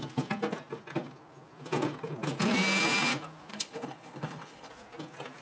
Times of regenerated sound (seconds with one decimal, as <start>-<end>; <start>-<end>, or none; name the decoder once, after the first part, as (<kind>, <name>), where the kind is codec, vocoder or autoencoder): 3.5-4.7 (codec, HILCodec)